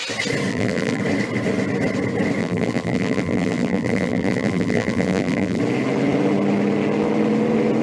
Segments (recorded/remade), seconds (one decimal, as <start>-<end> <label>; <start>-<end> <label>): 0.0-0.5 recorded; 0.5-1.0 remade; 1.0-2.4 recorded; 2.4-5.6 remade; 5.6-7.8 recorded

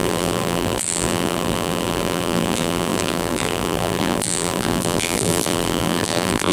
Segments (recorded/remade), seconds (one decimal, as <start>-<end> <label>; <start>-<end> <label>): 0.0-6.5 remade

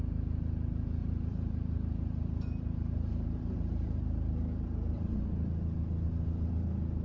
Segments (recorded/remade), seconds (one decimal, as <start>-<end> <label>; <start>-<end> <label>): 0.0-1.0 recorded; 1.0-4.0 remade; 4.0-7.0 recorded

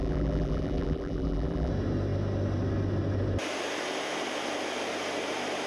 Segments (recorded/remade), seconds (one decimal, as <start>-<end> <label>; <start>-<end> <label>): 0.0-1.7 remade; 1.7-5.7 recorded

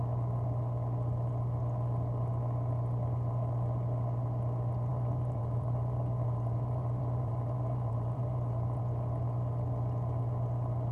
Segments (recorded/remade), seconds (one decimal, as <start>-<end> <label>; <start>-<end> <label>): 0.0-4.9 recorded; 4.9-8.8 remade; 8.8-10.9 recorded

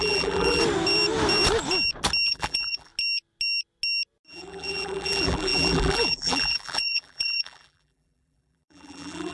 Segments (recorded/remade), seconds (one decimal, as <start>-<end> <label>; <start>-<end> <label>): 0.0-0.6 remade; 0.6-2.3 recorded; 2.3-2.9 remade; 2.9-4.3 recorded; 4.3-9.3 remade